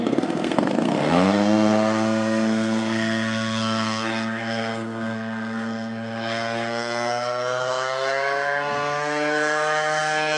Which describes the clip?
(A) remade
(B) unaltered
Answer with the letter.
A